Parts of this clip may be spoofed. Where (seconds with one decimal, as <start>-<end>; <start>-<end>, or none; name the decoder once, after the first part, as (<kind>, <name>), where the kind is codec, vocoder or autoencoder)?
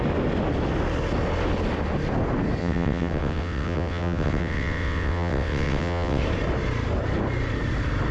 2.6-6.2 (vocoder, WaveNeXt)